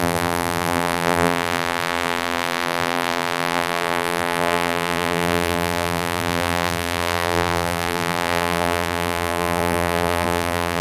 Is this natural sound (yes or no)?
no